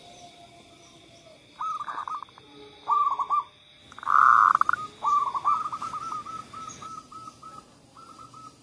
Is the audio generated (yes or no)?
no